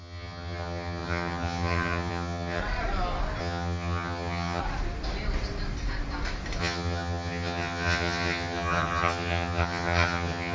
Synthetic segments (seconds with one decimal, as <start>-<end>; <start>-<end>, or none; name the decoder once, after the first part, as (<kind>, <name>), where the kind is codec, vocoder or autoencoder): 0.0-2.6 (vocoder, HiFi-GAN); 3.4-4.6; 6.6-10.5